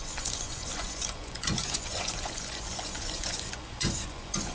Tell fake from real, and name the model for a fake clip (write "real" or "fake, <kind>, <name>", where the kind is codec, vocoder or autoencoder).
fake, vocoder, Vocos